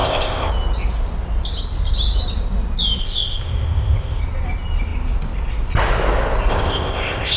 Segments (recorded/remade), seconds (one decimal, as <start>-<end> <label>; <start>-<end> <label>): 0.0-0.5 remade; 0.5-3.0 recorded; 3.0-4.2 remade; 4.2-6.5 recorded; 6.5-7.4 remade